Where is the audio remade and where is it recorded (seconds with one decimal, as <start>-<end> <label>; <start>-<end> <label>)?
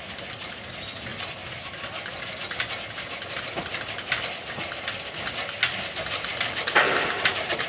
0.0-7.7 recorded